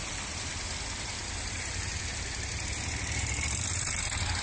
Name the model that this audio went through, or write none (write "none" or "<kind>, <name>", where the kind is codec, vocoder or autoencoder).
none